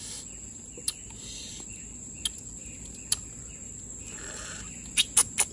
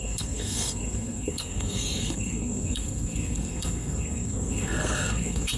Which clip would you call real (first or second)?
first